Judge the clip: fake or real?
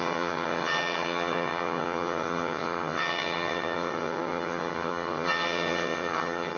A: fake